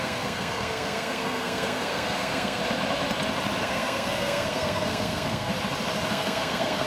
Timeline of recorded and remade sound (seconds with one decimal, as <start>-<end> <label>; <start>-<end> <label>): 0.0-2.6 remade; 2.6-3.6 recorded; 3.6-5.5 remade; 5.5-6.1 recorded; 6.1-6.9 remade